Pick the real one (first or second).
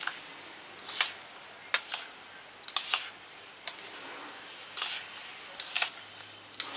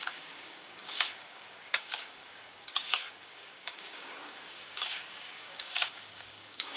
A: first